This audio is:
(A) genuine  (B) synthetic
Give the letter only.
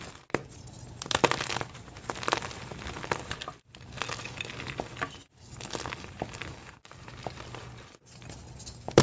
A